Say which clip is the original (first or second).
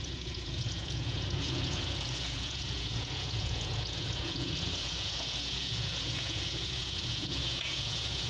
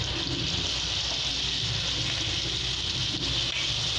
second